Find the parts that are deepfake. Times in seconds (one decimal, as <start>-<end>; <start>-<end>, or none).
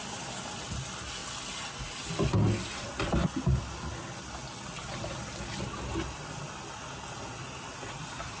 none